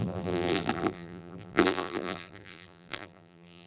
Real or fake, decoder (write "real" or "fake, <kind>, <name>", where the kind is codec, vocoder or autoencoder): fake, vocoder, BigVGAN v2